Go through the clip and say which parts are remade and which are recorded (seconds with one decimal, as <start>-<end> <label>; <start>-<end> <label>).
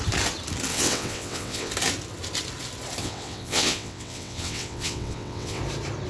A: 0.0-0.7 recorded; 0.7-1.7 remade; 1.7-3.0 recorded; 3.0-5.6 remade; 5.6-6.1 recorded